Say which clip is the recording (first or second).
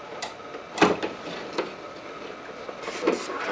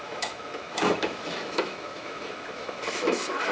first